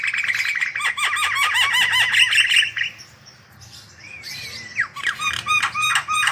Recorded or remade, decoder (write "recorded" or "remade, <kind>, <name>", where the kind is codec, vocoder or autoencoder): recorded